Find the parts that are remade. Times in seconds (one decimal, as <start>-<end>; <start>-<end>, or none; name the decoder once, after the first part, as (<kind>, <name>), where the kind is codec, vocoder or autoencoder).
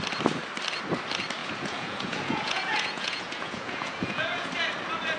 1.4-4.5 (vocoder, Vocos)